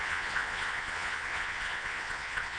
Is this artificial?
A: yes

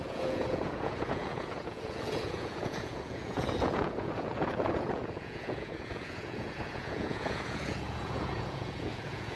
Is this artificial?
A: yes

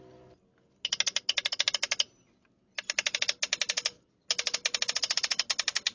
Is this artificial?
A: no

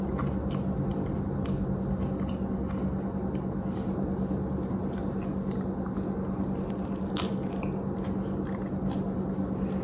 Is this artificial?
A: no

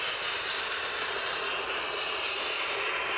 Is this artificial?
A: no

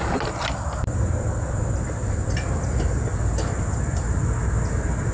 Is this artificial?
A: no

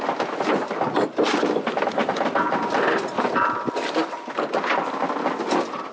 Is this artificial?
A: no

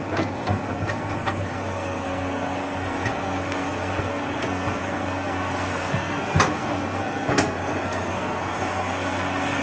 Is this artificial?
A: yes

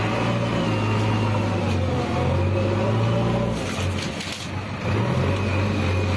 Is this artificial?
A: no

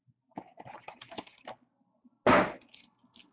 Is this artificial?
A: no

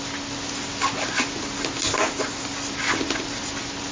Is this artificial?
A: no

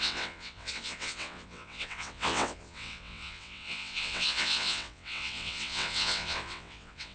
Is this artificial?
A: yes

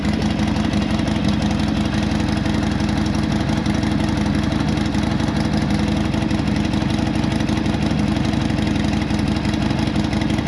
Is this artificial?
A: no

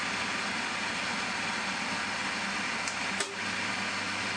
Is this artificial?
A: no